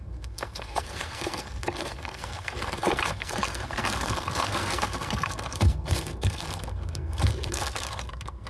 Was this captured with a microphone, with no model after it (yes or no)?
no